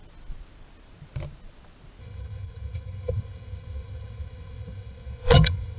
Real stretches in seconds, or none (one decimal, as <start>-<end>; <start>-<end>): 0.0-2.0